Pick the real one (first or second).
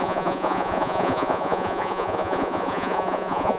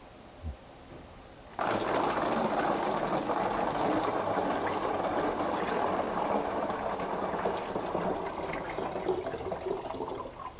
second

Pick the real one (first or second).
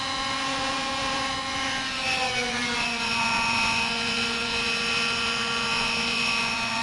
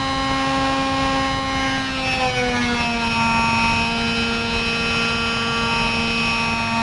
second